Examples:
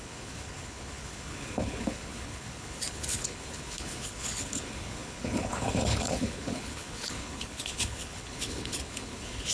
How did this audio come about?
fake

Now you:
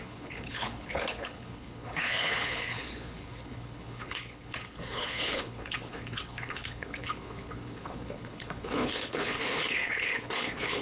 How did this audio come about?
fake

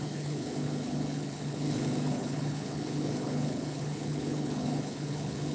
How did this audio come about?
fake